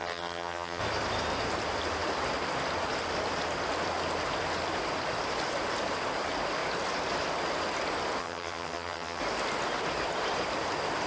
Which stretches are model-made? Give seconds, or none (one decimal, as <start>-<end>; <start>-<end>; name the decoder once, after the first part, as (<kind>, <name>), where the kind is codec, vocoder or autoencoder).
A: 0.0-0.8 (vocoder, HiFi-GAN); 8.2-9.2

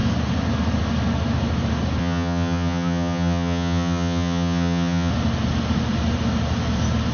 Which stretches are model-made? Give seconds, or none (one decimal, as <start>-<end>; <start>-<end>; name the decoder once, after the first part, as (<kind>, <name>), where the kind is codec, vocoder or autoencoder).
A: 2.0-5.1 (vocoder, HiFi-GAN)